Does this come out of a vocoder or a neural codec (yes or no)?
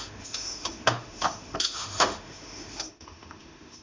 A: yes